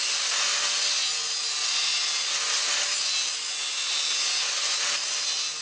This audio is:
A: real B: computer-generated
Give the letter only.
A